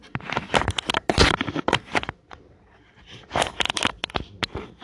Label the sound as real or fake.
real